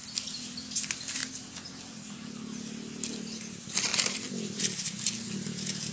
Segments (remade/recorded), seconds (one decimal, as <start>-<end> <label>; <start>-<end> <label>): 0.0-5.9 recorded